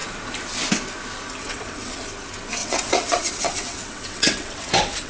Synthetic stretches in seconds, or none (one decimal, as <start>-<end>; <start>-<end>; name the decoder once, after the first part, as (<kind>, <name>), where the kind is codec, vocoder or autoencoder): 1.4-2.0 (vocoder, WaveNeXt); 2.6-5.1